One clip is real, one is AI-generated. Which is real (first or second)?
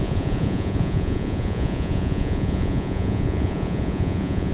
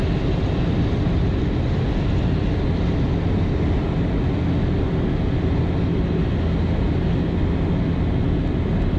second